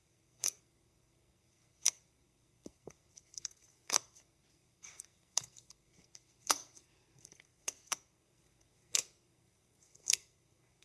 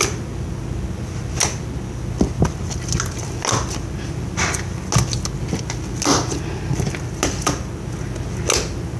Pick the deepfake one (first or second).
first